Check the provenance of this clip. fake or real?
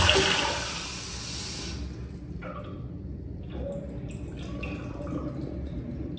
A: real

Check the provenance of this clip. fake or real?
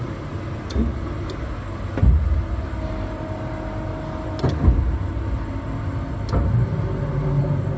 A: real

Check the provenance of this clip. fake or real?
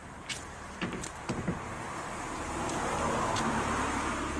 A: fake